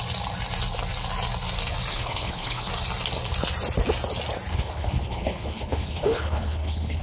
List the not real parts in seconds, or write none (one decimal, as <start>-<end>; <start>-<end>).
1.9-2.7; 4.5-7.0